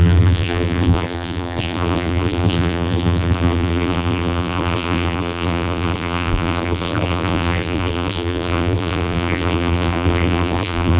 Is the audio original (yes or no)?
no